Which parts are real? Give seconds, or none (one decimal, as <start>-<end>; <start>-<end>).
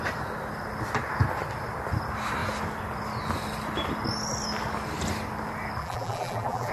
0.0-5.8